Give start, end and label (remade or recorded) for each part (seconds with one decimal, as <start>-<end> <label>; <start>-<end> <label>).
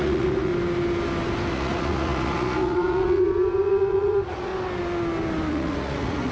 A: 0.0-0.5 remade; 0.5-1.5 recorded; 1.5-4.5 remade; 4.5-5.5 recorded; 5.5-6.3 remade